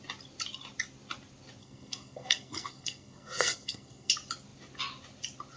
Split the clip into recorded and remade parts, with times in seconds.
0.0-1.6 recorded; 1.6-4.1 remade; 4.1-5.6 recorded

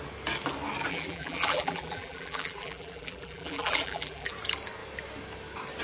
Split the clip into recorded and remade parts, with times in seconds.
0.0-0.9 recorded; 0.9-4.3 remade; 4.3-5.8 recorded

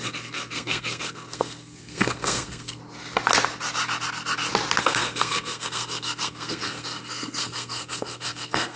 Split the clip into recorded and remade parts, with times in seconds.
0.0-2.8 remade; 2.8-4.8 recorded; 4.8-8.8 remade